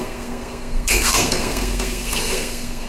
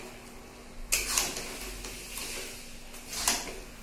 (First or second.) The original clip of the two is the second